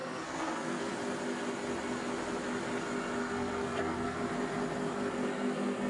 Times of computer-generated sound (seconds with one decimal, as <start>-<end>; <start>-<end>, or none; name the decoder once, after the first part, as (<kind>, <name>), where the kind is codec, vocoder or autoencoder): 0.0-0.9 (codec, SNAC); 3.2-4.2; 5.2-5.9